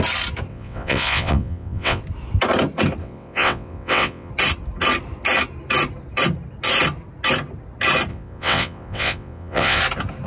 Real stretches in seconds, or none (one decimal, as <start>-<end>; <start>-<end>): 0.0-0.5; 2.0-3.0; 4.3-8.1; 9.8-10.3